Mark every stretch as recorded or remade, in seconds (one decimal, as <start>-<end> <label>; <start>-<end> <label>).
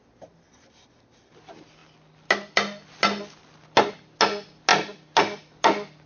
0.0-6.1 recorded